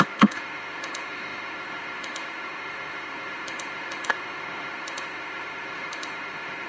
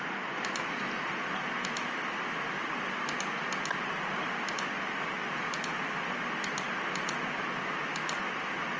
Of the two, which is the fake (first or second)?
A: first